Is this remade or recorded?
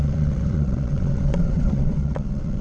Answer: remade